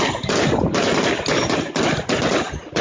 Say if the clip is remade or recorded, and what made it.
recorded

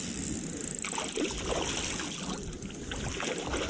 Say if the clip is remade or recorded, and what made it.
recorded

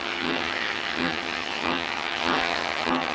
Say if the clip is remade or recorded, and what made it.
remade, vocoder, HiFi-GAN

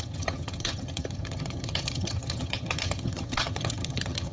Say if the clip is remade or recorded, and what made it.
remade, vocoder, HiFi-GAN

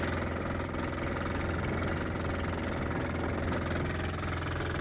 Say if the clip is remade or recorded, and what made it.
recorded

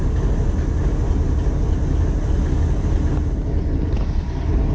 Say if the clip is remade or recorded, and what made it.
recorded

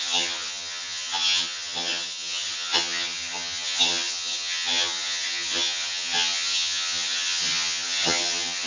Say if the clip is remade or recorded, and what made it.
remade, vocoder, HiFi-GAN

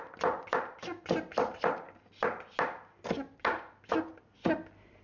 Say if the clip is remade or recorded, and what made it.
recorded